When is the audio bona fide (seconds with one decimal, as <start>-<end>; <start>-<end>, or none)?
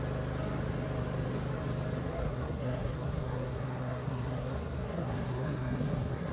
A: 0.0-2.1